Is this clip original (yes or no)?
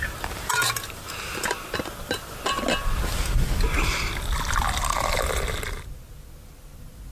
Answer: yes